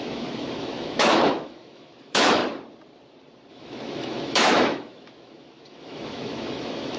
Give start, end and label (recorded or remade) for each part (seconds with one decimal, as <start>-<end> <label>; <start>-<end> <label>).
0.0-2.4 remade; 2.4-3.5 recorded; 3.5-7.0 remade

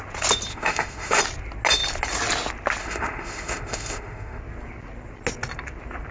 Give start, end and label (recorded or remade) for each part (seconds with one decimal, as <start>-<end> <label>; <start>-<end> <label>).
0.0-0.5 recorded; 0.5-1.2 remade; 1.2-2.8 recorded; 2.8-4.4 remade; 4.4-6.1 recorded

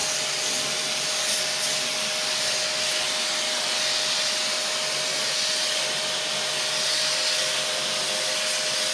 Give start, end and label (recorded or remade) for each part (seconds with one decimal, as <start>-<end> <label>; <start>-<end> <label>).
0.0-8.9 recorded

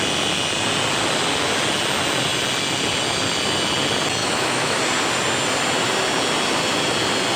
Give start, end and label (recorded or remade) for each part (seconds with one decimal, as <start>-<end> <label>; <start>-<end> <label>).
0.0-4.2 recorded; 4.2-4.8 remade; 4.8-7.4 recorded

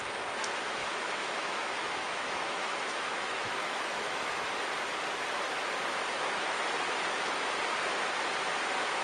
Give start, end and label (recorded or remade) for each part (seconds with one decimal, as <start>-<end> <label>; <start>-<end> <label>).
0.0-0.8 recorded; 0.8-4.3 remade; 4.3-5.9 recorded; 5.9-6.7 remade; 6.7-9.0 recorded